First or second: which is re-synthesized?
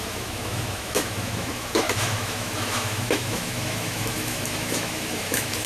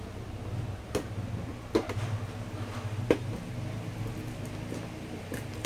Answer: first